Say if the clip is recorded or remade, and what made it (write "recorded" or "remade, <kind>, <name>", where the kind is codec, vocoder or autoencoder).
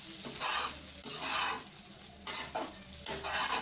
recorded